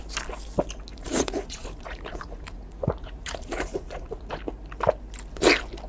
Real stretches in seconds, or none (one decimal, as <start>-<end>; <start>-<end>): 0.0-0.9; 4.4-5.9